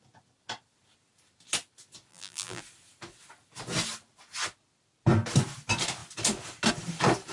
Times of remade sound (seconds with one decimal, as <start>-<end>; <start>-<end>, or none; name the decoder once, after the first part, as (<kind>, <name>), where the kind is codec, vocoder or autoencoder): 2.1-2.6 (vocoder, BigVGAN v2)